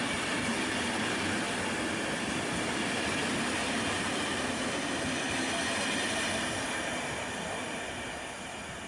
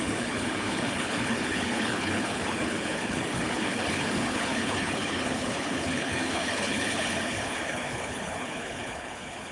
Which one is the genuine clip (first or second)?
first